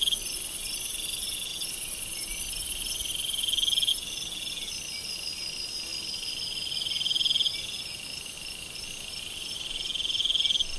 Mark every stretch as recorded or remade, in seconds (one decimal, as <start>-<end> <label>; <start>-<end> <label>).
0.0-10.8 recorded